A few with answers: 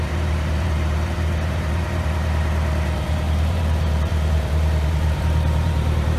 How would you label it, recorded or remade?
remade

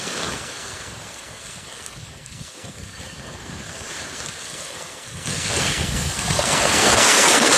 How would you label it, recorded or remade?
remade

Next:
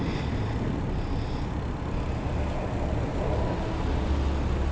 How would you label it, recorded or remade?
recorded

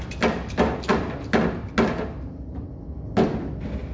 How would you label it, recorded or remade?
recorded